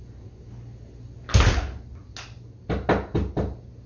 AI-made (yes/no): no